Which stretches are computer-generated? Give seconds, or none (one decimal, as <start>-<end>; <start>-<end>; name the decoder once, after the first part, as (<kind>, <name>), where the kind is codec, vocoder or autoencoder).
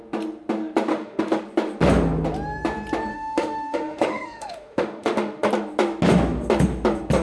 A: 0.9-1.4 (autoencoder, DAC-VAE); 3.1-5.5